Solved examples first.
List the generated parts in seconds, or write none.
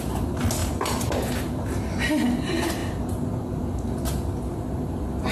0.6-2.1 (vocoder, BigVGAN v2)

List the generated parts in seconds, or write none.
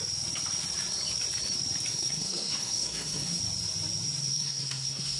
1.9-3.4 (codec, SNAC); 4.2-5.2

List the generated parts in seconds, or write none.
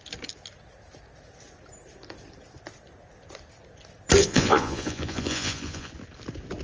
4.2-5.9 (vocoder, Vocos)